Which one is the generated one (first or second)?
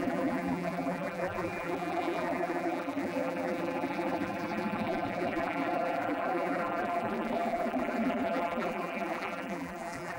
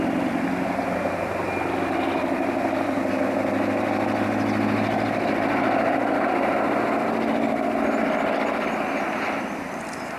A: first